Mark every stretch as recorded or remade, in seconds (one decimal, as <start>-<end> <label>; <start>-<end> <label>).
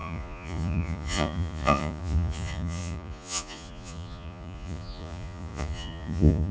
0.0-6.5 remade